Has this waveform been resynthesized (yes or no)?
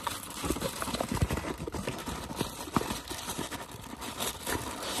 yes